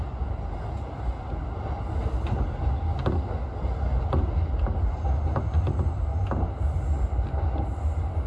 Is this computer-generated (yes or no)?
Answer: no